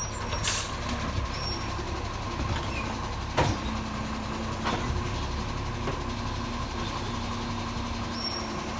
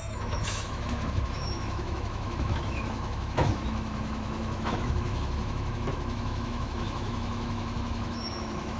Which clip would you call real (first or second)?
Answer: first